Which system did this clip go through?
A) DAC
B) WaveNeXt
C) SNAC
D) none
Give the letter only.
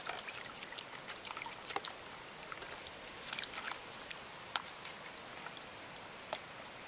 D